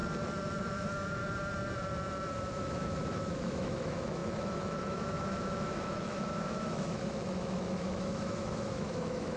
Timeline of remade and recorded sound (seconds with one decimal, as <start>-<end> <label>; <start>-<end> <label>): 0.0-0.6 recorded; 0.6-1.2 remade; 1.2-2.5 recorded; 2.5-9.4 remade